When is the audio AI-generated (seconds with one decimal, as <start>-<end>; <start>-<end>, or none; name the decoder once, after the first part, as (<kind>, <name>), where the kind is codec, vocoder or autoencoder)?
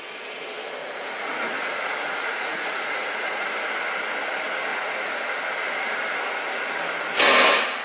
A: 0.8-3.5 (vocoder, Vocos); 4.7-5.4